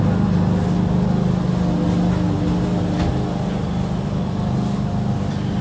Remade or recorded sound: recorded